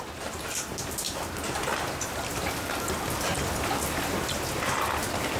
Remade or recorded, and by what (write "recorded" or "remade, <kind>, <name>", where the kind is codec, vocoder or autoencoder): recorded